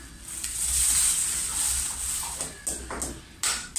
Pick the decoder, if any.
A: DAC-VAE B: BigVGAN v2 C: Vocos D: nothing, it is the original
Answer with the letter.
D